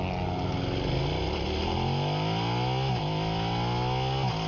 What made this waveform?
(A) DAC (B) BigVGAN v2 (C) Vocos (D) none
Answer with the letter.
D